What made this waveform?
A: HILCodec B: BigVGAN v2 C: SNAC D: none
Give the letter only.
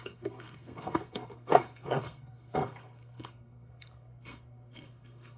C